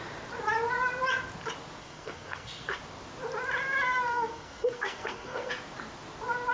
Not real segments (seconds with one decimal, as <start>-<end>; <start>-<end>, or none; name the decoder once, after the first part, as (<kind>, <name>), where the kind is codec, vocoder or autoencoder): 1.8-2.8 (codec, SNAC); 4.1-5.5